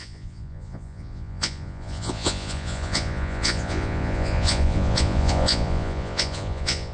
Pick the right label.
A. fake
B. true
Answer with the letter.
A